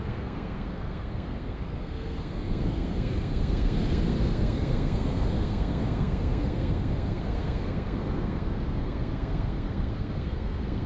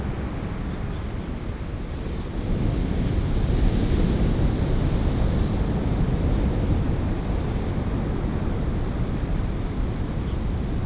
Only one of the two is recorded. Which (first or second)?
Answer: second